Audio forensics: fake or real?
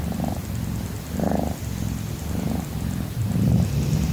fake